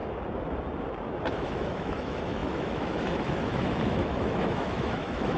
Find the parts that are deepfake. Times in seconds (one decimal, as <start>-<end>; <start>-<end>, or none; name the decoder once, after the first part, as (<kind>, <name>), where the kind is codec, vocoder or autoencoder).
1.3-5.4 (autoencoder, DAC-VAE)